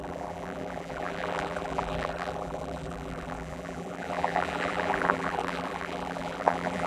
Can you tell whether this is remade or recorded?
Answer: remade